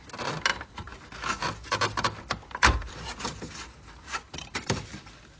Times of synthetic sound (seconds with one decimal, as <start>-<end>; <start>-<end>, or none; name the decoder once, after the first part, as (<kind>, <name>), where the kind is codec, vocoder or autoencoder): none